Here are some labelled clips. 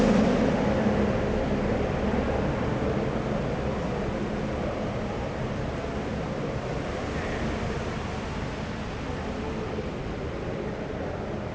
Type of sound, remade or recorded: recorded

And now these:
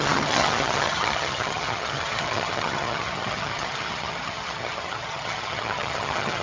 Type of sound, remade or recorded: remade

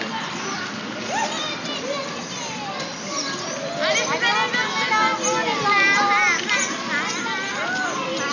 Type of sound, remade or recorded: recorded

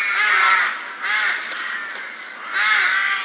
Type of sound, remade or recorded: recorded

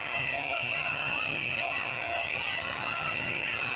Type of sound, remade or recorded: remade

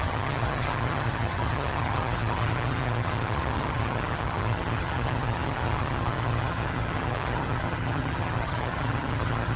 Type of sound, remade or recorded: remade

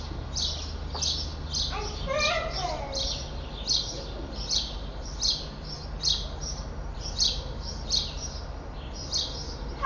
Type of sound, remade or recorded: recorded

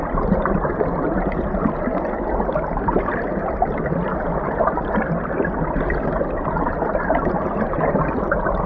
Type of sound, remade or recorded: recorded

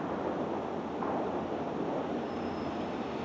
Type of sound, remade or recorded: recorded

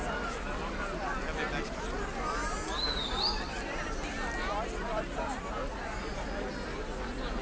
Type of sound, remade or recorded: recorded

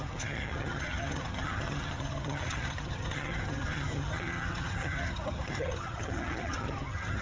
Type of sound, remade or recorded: remade